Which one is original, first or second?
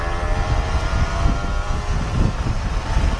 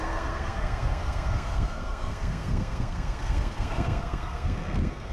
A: first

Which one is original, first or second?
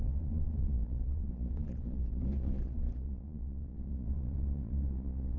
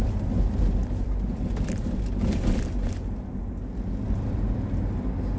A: second